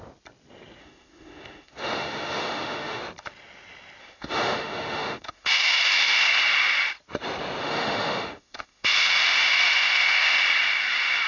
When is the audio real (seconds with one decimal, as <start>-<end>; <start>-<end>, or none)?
0.0-0.8; 3.0-4.0; 6.4-7.6; 10.4-11.3